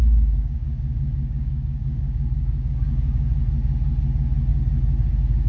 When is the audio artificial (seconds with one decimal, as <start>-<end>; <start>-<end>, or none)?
0.0-3.3